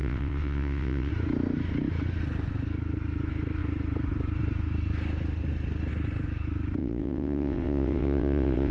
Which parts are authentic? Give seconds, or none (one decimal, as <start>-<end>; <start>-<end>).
1.1-6.8